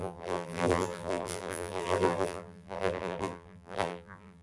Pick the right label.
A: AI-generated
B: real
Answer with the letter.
A